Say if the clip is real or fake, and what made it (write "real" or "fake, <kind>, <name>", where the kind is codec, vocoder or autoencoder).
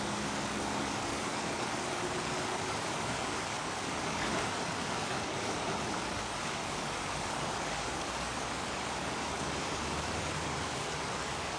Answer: fake, codec, DAC